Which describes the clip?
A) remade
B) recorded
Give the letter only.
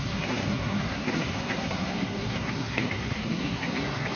A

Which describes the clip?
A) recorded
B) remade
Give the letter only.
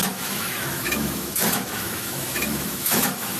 B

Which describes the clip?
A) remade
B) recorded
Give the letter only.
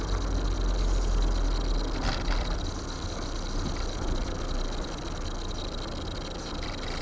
B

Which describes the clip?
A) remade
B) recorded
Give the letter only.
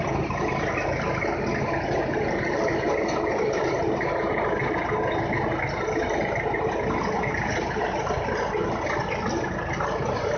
B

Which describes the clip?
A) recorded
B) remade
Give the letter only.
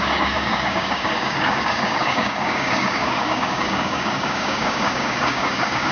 B